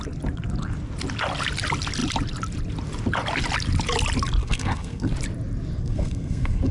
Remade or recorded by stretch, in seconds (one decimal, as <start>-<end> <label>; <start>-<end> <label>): 0.0-4.4 recorded; 4.4-5.1 remade; 5.1-5.8 recorded; 5.8-6.7 remade